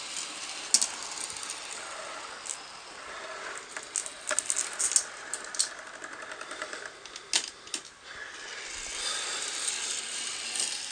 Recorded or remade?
recorded